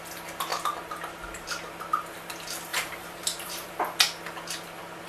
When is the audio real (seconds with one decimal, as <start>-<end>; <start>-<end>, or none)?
0.0-2.7; 3.7-5.1